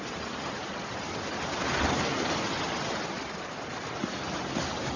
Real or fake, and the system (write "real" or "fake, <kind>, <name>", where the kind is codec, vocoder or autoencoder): real